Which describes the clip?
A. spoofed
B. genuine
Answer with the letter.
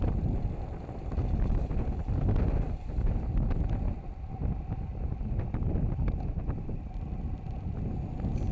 B